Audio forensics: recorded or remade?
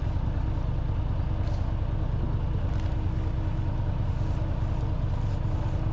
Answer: recorded